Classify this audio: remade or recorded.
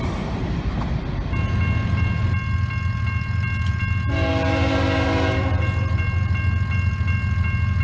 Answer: recorded